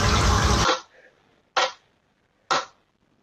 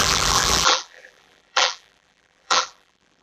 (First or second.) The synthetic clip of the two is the second